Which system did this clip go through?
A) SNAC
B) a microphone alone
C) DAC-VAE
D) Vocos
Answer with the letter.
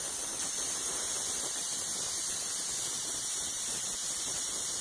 B